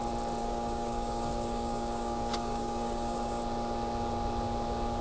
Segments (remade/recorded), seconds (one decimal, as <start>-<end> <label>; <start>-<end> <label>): 0.0-0.4 recorded; 0.4-3.4 remade; 3.4-5.0 recorded